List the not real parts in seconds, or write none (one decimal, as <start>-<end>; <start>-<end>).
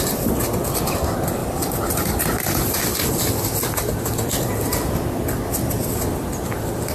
1.4-2.4